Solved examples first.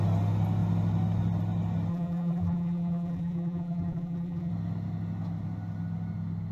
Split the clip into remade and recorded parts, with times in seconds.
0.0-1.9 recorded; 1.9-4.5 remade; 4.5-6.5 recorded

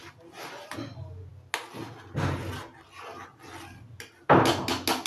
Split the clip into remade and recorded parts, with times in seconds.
0.0-5.1 recorded

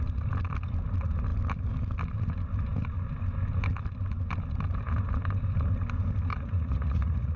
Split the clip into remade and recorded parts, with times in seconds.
0.0-6.3 recorded; 6.3-7.4 remade

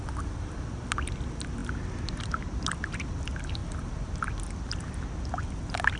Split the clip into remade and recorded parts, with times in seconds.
0.0-6.0 recorded

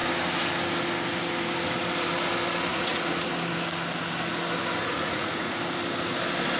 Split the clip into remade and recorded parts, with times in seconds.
0.0-2.7 recorded; 2.7-3.3 remade; 3.3-4.9 recorded; 4.9-5.6 remade; 5.6-6.6 recorded

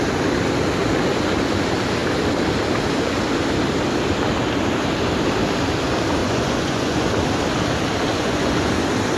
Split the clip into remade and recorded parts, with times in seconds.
0.0-6.2 recorded; 6.2-7.1 remade; 7.1-8.1 recorded; 8.1-8.7 remade; 8.7-9.2 recorded